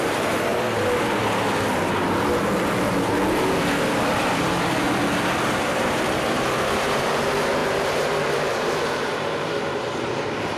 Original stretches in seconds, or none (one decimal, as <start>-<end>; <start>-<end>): 0.5-5.5